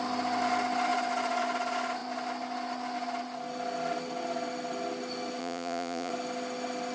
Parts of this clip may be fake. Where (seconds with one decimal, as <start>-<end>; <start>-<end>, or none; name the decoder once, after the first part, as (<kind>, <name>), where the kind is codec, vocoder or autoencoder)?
5.4-6.1 (vocoder, Vocos)